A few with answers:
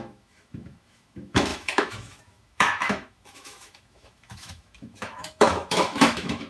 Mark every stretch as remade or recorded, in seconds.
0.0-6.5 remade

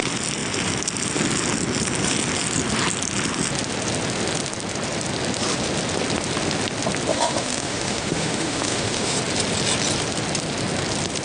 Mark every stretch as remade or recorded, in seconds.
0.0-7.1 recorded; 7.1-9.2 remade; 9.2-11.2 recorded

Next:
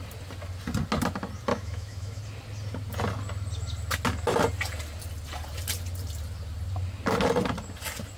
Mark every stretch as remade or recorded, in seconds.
0.0-1.5 recorded; 1.5-2.2 remade; 2.2-8.2 recorded

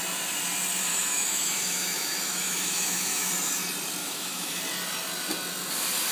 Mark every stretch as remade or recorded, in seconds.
0.0-0.9 recorded; 0.9-3.3 remade; 3.3-4.0 recorded; 4.0-4.6 remade; 4.6-6.1 recorded